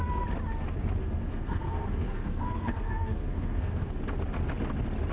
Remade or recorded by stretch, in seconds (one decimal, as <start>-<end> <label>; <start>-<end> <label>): 0.0-1.0 recorded; 1.0-3.9 remade; 3.9-5.1 recorded